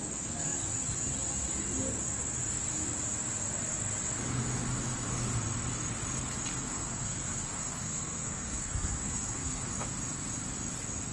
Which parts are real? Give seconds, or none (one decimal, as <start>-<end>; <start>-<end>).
0.0-6.5; 9.6-11.1